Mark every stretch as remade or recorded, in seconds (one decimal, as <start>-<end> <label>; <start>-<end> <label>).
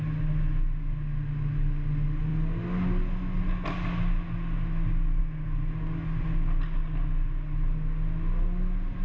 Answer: 0.0-9.0 recorded